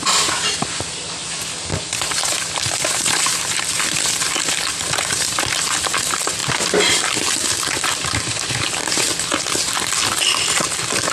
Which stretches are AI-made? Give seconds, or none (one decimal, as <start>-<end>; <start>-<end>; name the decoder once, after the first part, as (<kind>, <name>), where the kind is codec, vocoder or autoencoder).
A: none